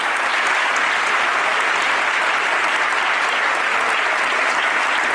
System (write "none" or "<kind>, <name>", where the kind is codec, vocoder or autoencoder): none